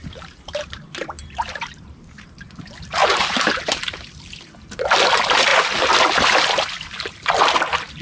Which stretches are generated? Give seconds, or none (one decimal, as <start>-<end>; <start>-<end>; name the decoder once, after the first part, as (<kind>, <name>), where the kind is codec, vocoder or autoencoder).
0.0-2.6 (vocoder, BigVGAN v2); 3.0-3.6